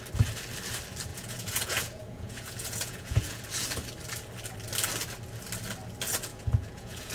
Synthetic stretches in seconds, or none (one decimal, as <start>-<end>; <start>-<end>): 1.1-3.4; 6.3-7.1